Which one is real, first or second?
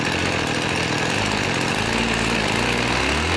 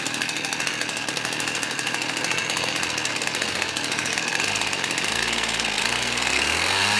first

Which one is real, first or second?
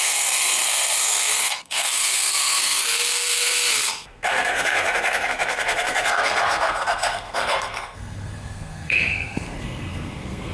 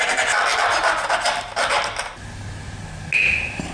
second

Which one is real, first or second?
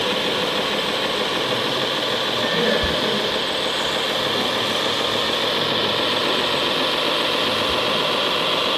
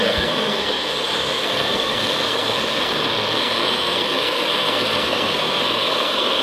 first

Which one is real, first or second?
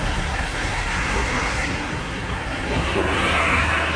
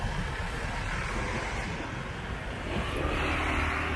second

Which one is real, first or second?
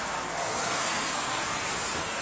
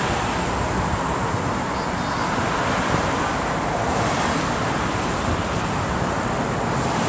second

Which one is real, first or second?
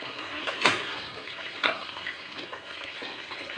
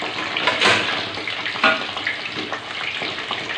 second